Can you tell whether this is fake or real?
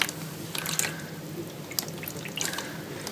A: real